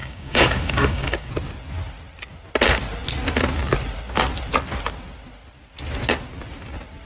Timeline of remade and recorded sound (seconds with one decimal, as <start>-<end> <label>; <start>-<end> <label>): 0.0-1.3 remade; 1.3-7.1 recorded